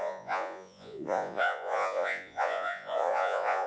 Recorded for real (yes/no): no